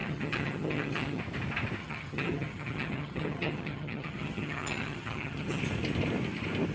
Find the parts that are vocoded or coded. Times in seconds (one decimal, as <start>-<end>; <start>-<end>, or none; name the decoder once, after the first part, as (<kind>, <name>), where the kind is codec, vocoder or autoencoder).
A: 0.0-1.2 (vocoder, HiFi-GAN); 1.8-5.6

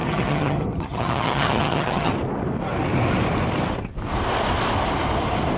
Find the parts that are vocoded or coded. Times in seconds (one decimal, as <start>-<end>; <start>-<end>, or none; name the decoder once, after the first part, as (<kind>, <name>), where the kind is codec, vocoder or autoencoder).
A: 0.0-2.1 (vocoder, HiFi-GAN)

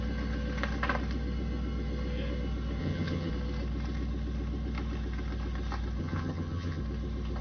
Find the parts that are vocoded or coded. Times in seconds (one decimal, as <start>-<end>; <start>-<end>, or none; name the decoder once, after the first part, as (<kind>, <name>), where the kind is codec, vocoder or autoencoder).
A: 2.8-3.3 (vocoder, HiFi-GAN); 6.0-6.8